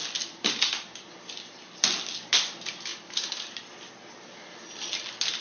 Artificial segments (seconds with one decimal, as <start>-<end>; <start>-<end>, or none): none